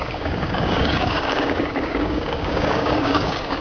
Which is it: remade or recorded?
remade